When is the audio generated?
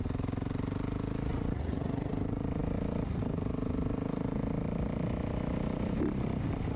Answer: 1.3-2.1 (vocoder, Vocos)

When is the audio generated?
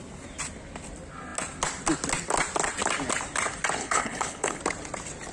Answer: 3.8-4.6 (codec, HILCodec)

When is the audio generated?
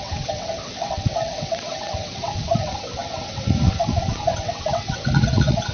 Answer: 0.0-5.7 (vocoder, WaveNeXt)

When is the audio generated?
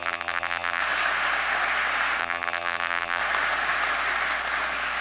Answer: 0.0-0.8 (vocoder, BigVGAN v2); 2.2-3.2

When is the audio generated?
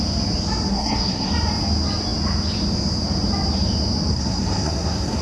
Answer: 0.7-1.3 (codec, SNAC); 4.1-5.2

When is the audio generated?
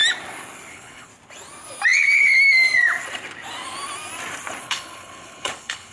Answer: 0.7-1.1 (codec, HILCodec); 4.6-5.9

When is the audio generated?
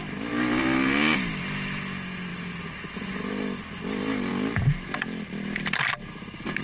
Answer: none